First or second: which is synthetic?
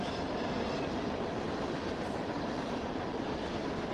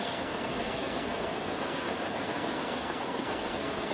second